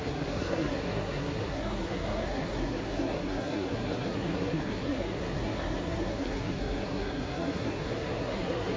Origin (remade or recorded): remade